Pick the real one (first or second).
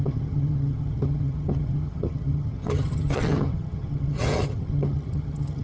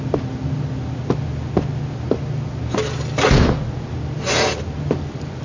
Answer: second